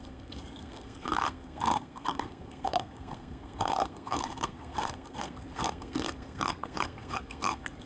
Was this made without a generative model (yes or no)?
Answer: no